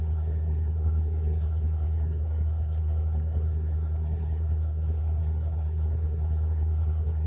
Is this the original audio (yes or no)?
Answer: no